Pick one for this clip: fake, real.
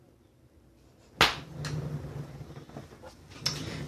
real